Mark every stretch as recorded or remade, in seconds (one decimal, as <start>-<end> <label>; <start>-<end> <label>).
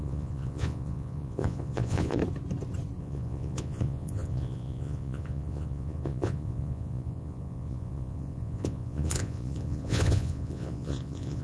0.0-2.2 remade; 2.2-3.0 recorded; 3.0-11.4 remade